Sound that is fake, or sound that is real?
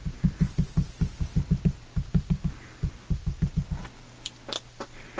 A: real